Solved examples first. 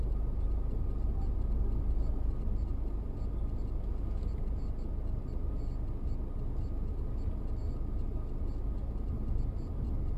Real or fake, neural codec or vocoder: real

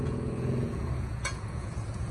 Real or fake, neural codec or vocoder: fake, vocoder, Vocos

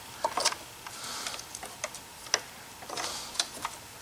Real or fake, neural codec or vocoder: real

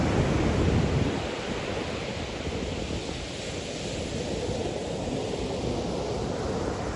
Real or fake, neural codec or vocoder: real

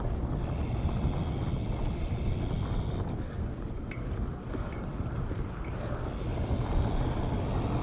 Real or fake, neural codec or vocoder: real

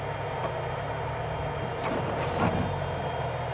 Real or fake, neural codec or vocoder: real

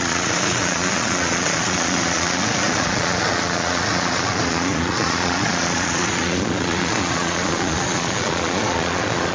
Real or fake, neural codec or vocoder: fake, vocoder, Vocos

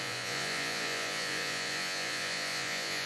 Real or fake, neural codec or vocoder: fake, vocoder, Vocos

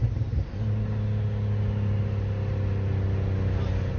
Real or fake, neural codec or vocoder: real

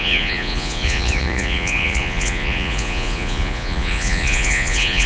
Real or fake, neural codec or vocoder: fake, vocoder, Vocos